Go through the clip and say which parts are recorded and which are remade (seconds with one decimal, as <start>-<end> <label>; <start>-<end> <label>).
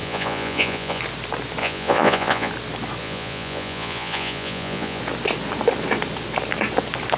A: 0.0-1.0 remade; 1.0-1.6 recorded; 1.6-2.5 remade; 2.5-3.0 recorded; 3.0-5.0 remade; 5.0-7.2 recorded